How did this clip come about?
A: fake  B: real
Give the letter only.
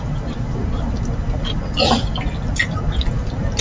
B